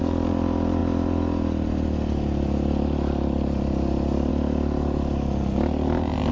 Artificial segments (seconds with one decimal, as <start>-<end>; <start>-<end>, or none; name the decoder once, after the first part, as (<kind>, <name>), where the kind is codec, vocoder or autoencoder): none